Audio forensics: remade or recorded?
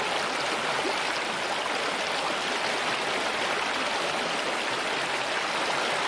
recorded